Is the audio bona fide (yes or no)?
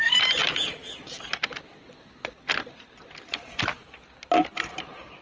yes